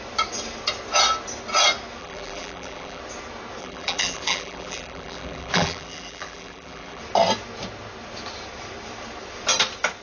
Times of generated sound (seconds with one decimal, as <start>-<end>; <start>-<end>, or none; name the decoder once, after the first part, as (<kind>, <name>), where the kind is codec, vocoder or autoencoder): 2.0-3.0 (vocoder, BigVGAN v2); 3.6-7.0